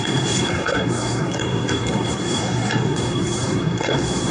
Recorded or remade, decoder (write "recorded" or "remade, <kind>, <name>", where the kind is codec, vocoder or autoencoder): remade, codec, SNAC